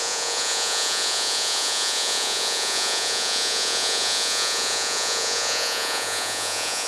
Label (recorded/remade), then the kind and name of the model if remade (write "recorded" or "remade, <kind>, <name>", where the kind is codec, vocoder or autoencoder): remade, vocoder, Vocos